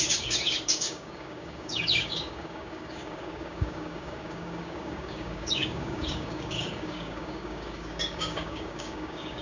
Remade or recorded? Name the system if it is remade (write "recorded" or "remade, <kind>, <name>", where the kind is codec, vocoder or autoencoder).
remade, codec, DAC